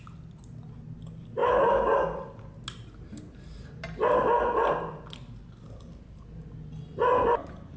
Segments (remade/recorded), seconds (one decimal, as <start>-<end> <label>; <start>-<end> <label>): 0.0-7.8 recorded